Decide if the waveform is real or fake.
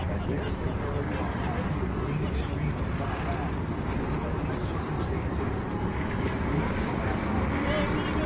real